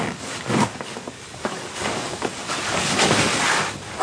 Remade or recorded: remade